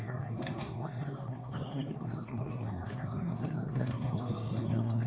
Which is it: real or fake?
fake